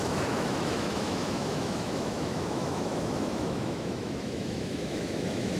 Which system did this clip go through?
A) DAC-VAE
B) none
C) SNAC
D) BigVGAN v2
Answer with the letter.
A